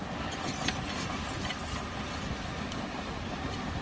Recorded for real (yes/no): yes